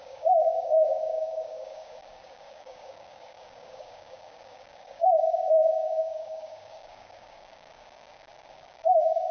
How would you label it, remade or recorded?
remade